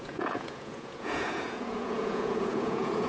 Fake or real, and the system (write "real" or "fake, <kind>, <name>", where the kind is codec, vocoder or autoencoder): fake, vocoder, Vocos